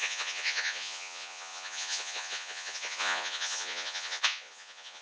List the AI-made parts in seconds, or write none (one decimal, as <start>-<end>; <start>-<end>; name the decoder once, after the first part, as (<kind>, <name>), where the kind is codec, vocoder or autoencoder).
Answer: 0.0-5.0 (vocoder, Vocos)